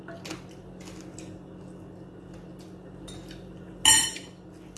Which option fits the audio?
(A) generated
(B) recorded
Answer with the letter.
B